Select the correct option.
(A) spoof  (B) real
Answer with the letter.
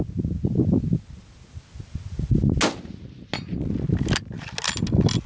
B